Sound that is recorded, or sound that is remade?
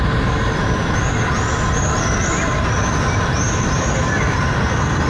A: recorded